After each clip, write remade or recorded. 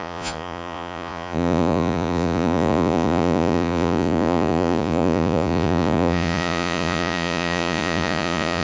remade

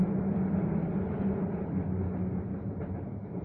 recorded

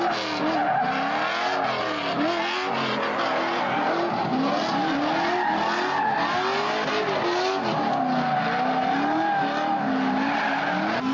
recorded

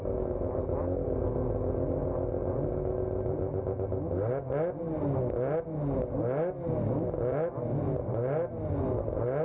recorded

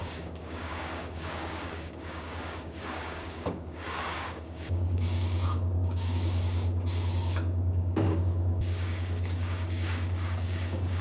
remade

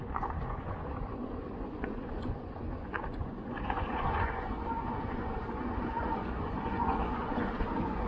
remade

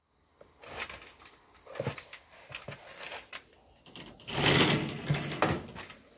recorded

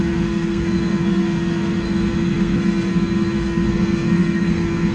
remade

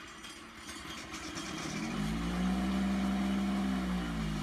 recorded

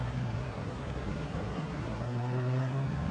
remade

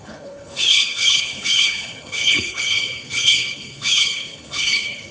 remade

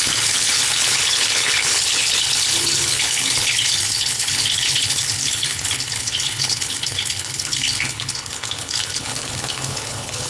remade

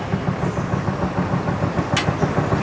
recorded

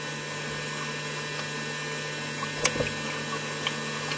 recorded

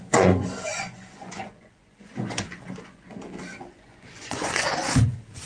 remade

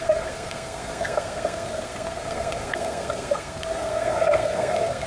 remade